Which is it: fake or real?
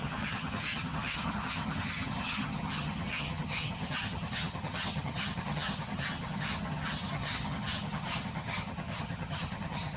fake